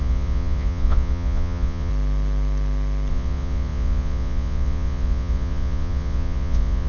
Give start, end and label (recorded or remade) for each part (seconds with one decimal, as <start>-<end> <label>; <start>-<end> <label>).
0.0-1.9 remade; 1.9-3.1 recorded; 3.1-6.9 remade